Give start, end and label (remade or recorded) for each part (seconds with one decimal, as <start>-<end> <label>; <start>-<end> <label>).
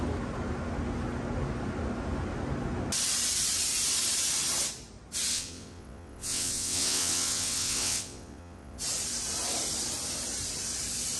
0.0-5.3 recorded; 5.3-8.8 remade; 8.8-11.2 recorded